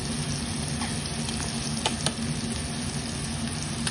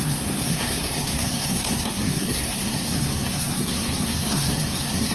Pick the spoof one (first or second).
second